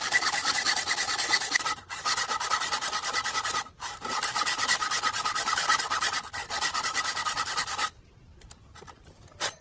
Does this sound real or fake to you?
fake